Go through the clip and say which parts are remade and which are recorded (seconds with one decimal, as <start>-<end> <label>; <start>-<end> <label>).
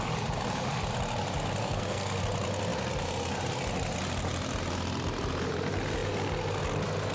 0.0-1.6 recorded; 1.6-2.2 remade; 2.2-7.1 recorded